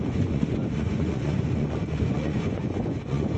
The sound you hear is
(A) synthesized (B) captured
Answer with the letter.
A